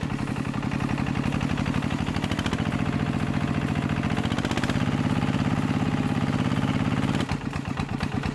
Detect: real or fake real